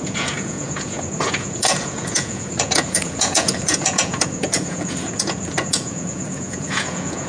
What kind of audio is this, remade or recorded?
remade